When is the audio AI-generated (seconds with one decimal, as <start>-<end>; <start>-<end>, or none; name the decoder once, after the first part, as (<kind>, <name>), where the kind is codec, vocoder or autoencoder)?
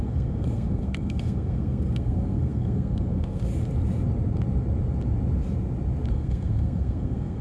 0.0-3.5 (codec, SNAC); 6.1-7.4